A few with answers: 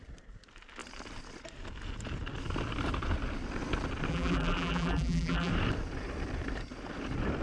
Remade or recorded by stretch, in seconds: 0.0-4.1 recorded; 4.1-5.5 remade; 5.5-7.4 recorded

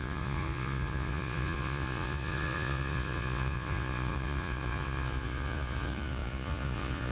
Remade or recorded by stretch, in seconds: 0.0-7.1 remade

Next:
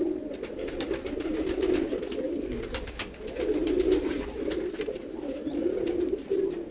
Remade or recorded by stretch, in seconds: 0.0-3.6 recorded; 3.6-5.9 remade; 5.9-6.7 recorded